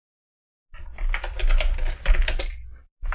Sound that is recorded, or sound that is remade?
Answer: recorded